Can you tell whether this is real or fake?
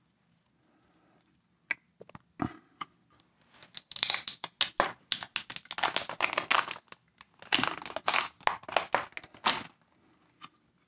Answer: real